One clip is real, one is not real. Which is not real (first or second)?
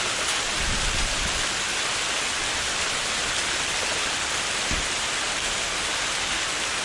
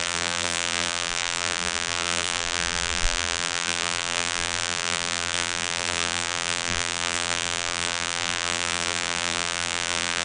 second